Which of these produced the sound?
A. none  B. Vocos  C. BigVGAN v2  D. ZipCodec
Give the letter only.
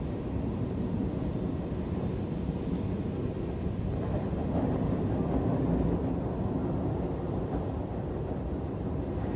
A